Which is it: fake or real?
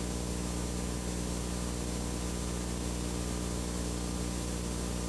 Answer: real